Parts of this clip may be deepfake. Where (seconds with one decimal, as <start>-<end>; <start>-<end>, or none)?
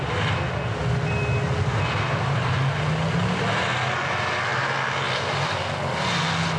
none